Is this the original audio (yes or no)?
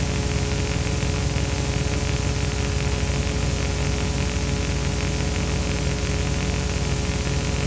yes